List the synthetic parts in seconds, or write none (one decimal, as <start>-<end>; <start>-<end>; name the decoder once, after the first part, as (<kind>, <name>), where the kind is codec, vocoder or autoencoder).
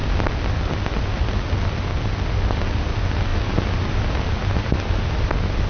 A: none